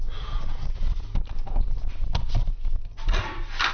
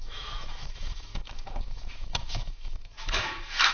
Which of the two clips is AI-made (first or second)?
second